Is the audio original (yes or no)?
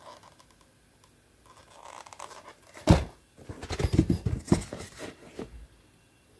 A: yes